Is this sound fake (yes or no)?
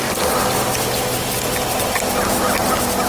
no